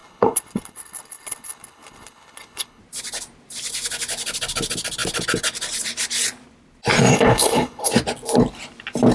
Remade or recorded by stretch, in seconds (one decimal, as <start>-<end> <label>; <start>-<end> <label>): 0.0-2.8 remade; 2.8-7.1 recorded; 7.1-7.9 remade; 7.9-9.1 recorded